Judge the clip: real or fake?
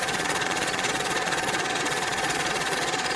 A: fake